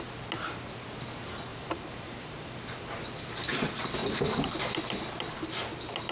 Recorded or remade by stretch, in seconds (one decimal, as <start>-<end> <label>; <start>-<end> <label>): 0.0-1.5 recorded; 1.5-3.0 remade; 3.0-6.1 recorded

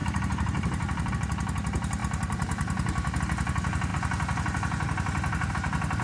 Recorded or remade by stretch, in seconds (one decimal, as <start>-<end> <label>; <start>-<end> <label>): 0.0-1.1 remade; 1.1-2.0 recorded; 2.0-3.2 remade; 3.2-6.0 recorded

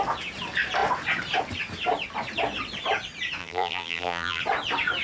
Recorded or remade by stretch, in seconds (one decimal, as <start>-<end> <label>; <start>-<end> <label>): 0.0-3.4 recorded; 3.4-4.4 remade; 4.4-5.0 recorded

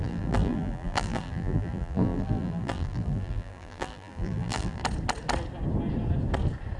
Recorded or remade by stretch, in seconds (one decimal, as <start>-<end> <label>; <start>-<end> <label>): 0.0-4.8 remade; 4.8-6.8 recorded

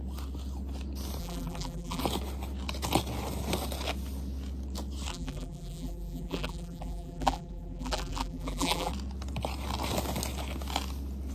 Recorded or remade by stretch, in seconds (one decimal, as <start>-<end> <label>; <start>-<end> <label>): 0.0-1.2 recorded; 1.2-2.0 remade; 2.0-5.1 recorded; 5.1-8.9 remade; 8.9-11.3 recorded

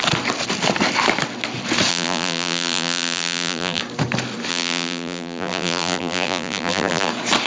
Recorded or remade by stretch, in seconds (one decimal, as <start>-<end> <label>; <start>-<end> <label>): 0.0-1.9 recorded; 1.9-3.8 remade; 3.8-4.5 recorded; 4.5-7.1 remade; 7.1-7.5 recorded

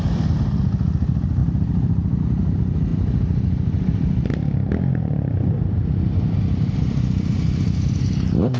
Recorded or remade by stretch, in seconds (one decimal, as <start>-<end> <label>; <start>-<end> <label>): 0.0-1.4 recorded; 1.4-2.2 remade; 2.2-2.9 recorded; 2.9-8.0 remade; 8.0-8.6 recorded